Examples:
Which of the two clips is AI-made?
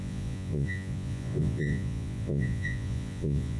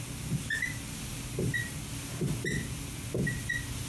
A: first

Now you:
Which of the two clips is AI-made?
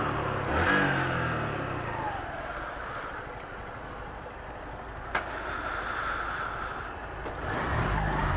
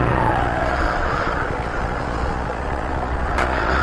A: second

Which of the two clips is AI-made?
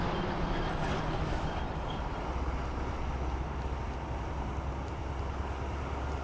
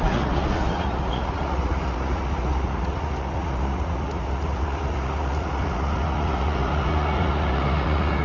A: second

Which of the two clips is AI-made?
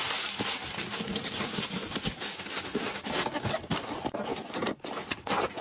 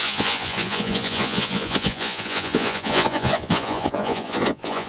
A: second